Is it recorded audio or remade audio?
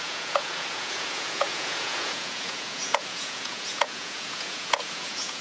remade